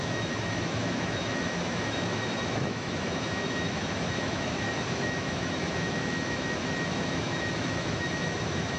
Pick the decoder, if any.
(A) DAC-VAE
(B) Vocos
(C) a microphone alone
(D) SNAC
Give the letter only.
A